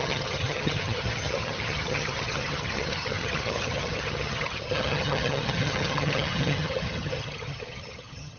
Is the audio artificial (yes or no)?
yes